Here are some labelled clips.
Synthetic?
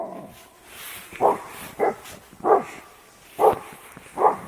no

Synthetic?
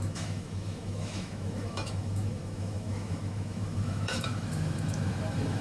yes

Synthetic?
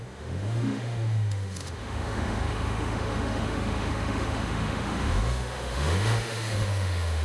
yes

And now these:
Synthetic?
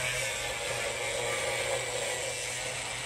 no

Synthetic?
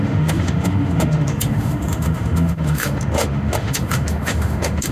yes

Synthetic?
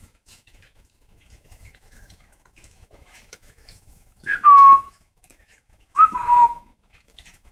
yes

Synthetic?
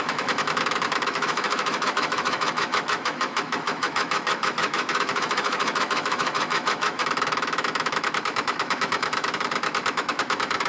yes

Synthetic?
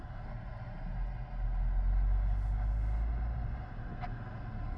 no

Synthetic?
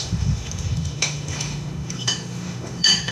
yes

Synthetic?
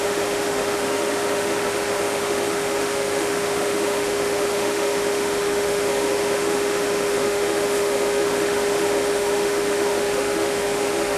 yes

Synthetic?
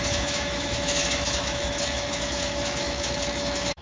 yes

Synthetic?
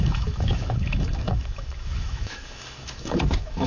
yes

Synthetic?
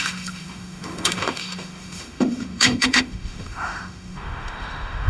yes